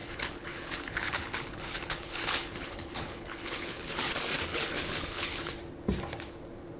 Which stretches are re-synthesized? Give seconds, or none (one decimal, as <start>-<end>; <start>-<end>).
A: 0.0-4.1; 4.5-5.5